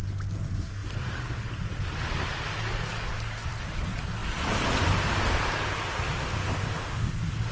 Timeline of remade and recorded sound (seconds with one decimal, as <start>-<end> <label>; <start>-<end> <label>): 0.0-6.4 recorded; 6.4-7.1 remade; 7.1-7.5 recorded